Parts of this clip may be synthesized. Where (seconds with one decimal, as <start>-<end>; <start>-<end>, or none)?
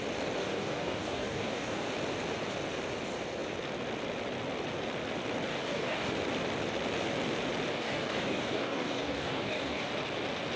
0.4-1.9; 5.5-6.1; 7.7-9.9